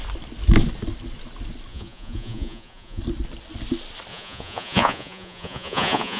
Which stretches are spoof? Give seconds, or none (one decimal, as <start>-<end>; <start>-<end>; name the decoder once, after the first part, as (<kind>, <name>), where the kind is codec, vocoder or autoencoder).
1.7-3.0 (vocoder, Vocos); 4.1-6.2

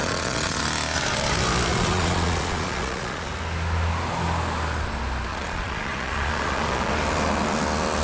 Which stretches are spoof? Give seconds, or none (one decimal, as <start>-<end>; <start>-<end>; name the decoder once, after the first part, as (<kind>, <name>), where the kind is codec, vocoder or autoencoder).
0.0-0.6 (vocoder, Vocos); 1.7-3.3; 5.3-6.9

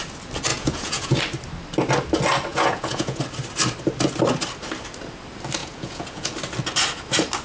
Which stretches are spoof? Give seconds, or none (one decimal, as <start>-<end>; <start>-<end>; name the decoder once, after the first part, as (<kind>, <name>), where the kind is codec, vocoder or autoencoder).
0.5-1.2 (vocoder, Vocos); 2.5-3.2; 5.6-6.3

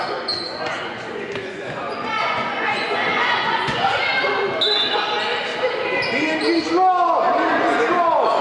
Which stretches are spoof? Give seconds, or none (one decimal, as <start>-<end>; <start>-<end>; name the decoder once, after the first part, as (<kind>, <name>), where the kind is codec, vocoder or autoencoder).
0.0-4.0 (vocoder, Vocos); 7.5-8.4

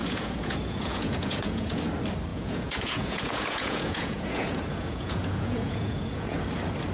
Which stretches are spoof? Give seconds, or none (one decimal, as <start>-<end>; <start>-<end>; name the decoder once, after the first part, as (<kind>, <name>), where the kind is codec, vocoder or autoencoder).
0.0-1.8 (vocoder, Vocos); 2.3-6.4

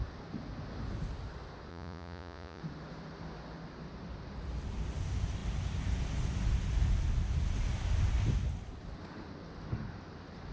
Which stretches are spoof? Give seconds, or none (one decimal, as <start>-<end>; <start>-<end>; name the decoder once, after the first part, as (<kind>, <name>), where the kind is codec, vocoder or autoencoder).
1.7-2.6 (vocoder, Vocos)

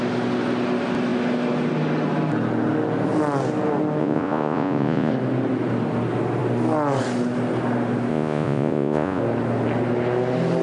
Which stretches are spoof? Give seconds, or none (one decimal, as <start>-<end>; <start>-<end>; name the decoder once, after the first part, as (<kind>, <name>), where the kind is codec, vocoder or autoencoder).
4.0-5.1 (vocoder, Vocos); 8.1-9.2